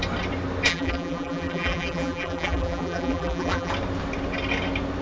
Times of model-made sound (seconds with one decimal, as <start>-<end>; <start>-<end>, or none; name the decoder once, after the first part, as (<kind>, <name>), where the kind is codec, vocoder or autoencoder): 0.7-3.7 (vocoder, BigVGAN v2)

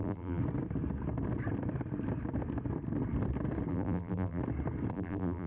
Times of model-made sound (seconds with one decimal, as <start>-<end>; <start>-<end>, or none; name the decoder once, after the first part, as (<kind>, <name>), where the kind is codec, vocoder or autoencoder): 0.0-0.4 (vocoder, BigVGAN v2); 3.7-4.4; 4.9-5.5

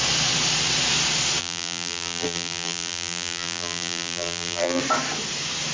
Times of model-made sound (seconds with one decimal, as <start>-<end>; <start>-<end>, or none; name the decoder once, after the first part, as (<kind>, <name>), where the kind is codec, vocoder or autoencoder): 1.4-4.8 (vocoder, BigVGAN v2)

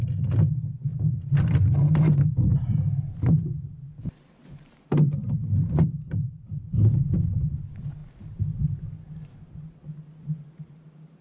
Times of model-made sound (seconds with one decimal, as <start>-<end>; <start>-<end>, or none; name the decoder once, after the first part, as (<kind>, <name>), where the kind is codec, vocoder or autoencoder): 2.5-7.5 (vocoder, BigVGAN v2)

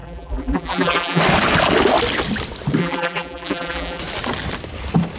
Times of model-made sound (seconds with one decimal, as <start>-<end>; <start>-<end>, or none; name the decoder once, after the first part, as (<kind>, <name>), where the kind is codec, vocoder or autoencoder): 0.0-1.2 (vocoder, BigVGAN v2); 2.8-4.0